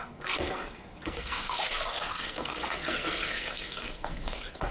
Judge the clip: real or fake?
fake